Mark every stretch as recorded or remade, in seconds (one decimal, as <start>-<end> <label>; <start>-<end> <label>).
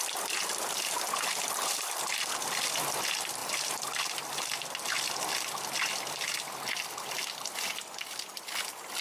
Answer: 0.0-9.0 recorded